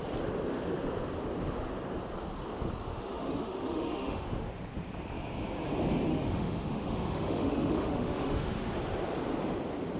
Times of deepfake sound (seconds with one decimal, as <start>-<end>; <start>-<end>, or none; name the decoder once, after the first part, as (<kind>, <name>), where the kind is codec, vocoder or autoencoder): 2.9-4.5 (autoencoder, DAC-VAE); 6.1-8.7